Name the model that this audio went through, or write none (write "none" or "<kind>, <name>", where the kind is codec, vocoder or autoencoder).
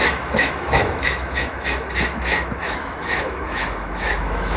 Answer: autoencoder, DAC-VAE